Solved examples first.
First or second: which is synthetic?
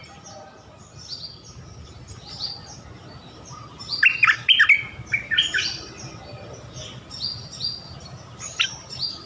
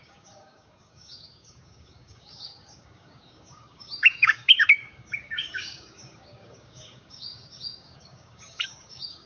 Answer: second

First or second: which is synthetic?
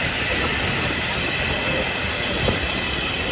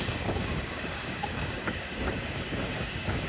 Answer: second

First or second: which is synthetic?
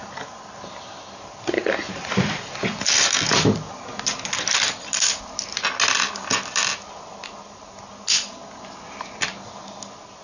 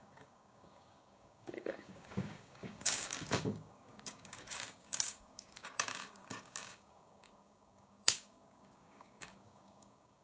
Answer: second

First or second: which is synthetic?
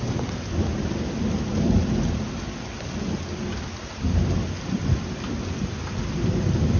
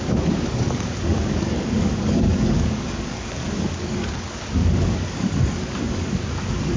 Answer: second